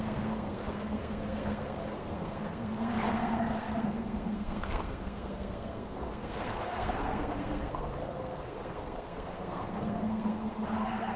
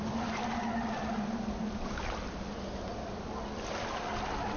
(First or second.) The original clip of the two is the second